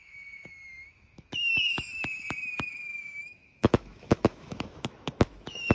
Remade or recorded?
remade